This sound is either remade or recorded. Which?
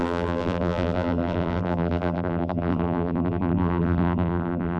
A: remade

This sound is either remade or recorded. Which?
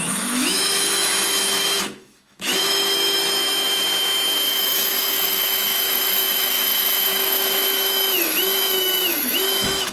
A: remade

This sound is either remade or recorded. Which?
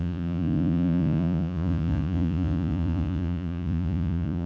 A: remade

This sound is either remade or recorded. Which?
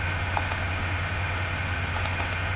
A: remade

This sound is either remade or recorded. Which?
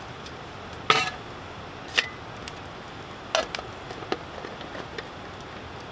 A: recorded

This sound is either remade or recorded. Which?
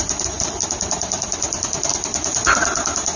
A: recorded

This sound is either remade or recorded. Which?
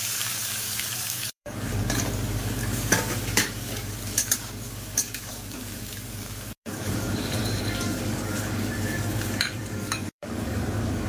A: remade